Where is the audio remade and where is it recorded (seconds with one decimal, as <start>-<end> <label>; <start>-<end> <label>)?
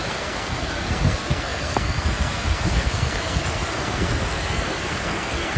0.0-5.6 remade